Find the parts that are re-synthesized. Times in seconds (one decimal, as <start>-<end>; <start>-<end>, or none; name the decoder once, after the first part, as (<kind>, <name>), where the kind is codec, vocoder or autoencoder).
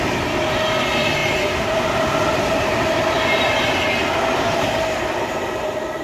none